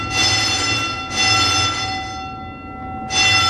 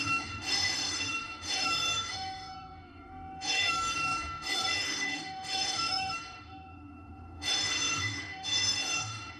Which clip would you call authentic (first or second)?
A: first